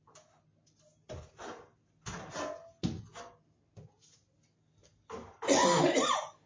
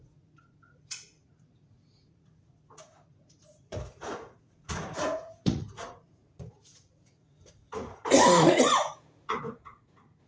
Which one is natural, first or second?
first